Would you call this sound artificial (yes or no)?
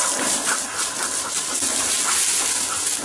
no